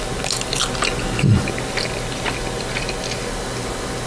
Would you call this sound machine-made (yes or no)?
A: no